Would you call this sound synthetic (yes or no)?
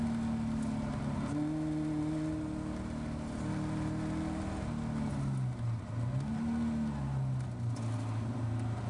no